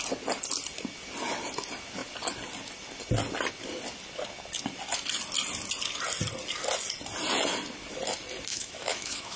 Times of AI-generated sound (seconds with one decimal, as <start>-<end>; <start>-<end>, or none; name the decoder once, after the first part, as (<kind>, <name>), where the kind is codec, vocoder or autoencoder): 8.5-9.4 (autoencoder, DAC-VAE)